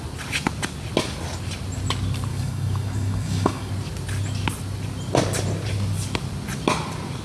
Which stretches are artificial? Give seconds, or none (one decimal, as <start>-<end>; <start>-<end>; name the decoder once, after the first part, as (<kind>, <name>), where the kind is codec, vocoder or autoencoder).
2.3-3.7 (codec, DAC)